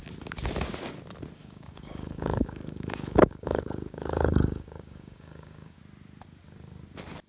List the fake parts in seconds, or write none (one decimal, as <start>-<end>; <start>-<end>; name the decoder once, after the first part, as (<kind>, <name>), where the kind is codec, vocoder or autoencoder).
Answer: 1.4-5.8 (codec, DAC)